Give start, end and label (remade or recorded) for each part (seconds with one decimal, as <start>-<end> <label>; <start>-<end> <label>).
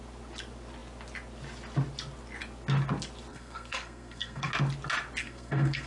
0.0-3.3 recorded; 3.3-4.5 remade; 4.5-5.2 recorded; 5.2-5.9 remade